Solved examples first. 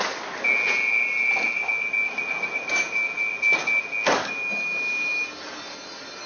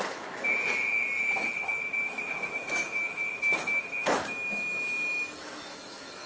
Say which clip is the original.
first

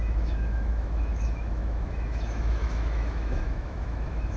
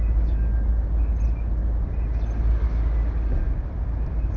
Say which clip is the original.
second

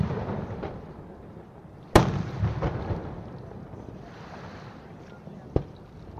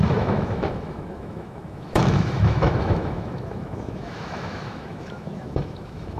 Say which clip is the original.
first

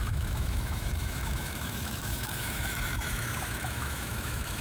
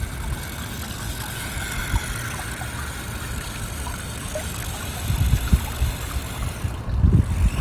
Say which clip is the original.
second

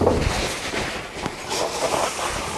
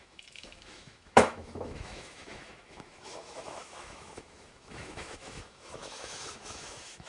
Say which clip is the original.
first